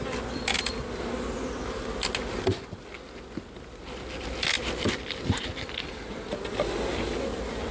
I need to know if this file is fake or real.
real